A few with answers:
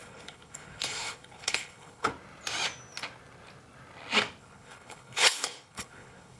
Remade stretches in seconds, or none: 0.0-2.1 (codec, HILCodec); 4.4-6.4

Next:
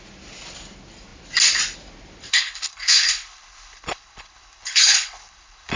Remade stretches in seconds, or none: 2.3-5.8 (codec, HILCodec)

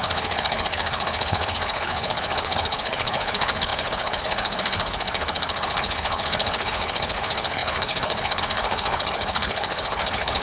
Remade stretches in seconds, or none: 0.0-10.4 (codec, HILCodec)

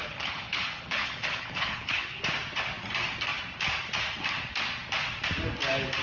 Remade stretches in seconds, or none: 0.0-2.2 (codec, HILCodec)

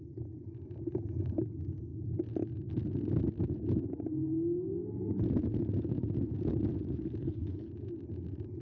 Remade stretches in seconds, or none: 7.2-7.7 (codec, HILCodec)